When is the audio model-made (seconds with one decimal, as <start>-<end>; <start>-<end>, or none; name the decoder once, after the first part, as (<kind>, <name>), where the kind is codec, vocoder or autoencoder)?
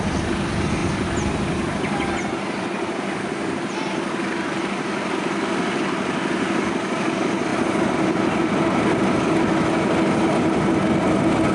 none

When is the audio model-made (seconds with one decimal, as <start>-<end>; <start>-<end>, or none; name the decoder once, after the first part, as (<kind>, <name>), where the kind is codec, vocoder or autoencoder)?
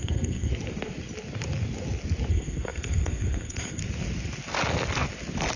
0.0-0.5 (codec, SNAC); 2.3-3.8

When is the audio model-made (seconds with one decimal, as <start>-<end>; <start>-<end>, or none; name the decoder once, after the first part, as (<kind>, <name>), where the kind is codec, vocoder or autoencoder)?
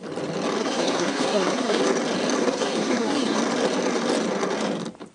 0.6-1.8 (codec, SNAC); 2.4-3.4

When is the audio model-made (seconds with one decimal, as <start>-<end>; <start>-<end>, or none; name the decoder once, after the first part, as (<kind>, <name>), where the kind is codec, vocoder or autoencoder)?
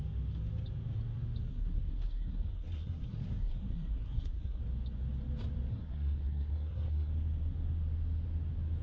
1.5-4.6 (codec, SNAC); 5.7-7.1